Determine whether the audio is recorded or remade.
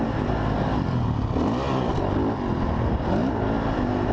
recorded